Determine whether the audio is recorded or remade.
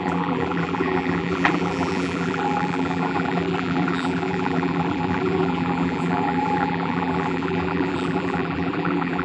remade